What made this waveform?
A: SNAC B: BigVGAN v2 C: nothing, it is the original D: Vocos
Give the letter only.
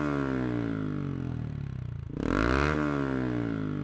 C